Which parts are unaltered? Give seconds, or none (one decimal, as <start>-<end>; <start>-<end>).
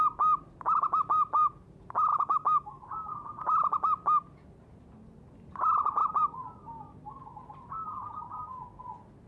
0.0-2.1; 2.8-9.3